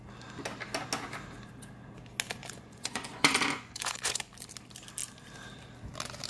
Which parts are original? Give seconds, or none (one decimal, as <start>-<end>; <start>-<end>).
0.0-2.4; 4.3-6.3